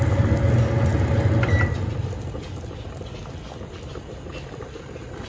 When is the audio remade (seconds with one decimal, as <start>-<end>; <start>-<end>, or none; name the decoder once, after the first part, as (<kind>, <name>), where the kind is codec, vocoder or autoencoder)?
none